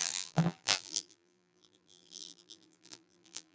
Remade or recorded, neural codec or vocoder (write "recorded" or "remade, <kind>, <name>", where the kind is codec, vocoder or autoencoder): remade, vocoder, BigVGAN v2